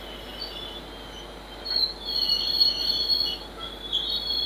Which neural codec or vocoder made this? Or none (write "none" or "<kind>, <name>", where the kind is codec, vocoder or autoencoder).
none